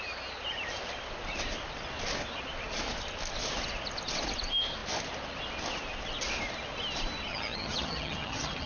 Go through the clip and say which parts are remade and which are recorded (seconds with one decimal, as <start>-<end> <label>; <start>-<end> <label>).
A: 0.0-7.3 recorded; 7.3-8.7 remade